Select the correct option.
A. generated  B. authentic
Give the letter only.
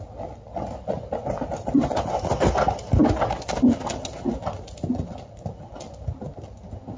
B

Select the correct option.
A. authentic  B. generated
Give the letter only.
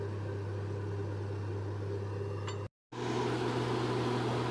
A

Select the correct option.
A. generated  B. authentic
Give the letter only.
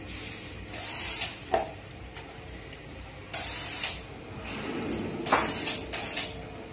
B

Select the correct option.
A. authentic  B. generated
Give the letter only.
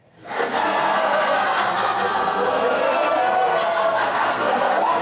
B